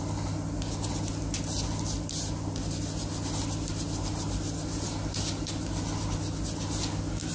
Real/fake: real